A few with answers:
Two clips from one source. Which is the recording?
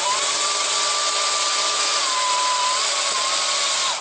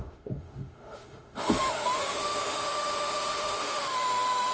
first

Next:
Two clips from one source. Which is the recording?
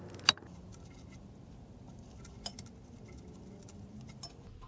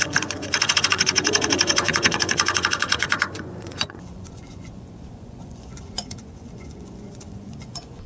first